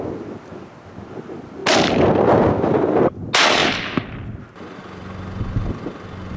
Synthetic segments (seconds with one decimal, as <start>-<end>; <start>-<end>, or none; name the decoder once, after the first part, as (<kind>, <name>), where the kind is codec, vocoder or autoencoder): none